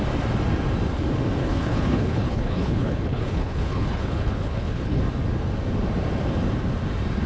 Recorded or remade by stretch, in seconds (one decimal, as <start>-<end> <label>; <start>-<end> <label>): 0.0-1.4 recorded; 1.4-5.0 remade; 5.0-7.3 recorded